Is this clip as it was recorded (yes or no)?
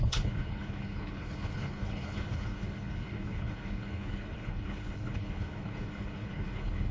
no